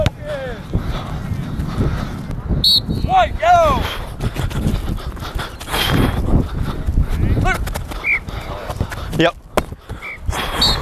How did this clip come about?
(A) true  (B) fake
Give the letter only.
A